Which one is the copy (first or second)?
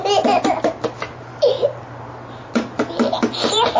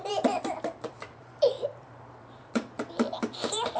second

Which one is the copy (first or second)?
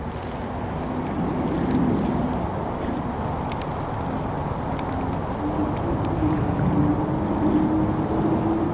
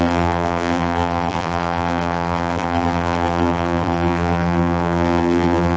second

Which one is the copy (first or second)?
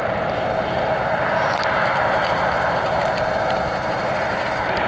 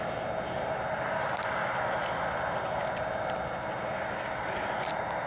first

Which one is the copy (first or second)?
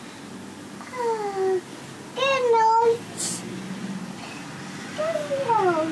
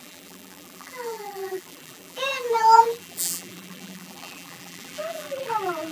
second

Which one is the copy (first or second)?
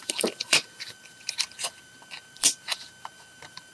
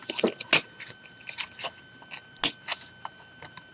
first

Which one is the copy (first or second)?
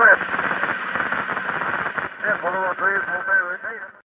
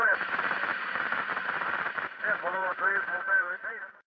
second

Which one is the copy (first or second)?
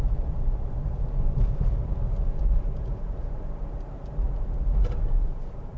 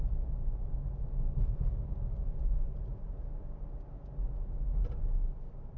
first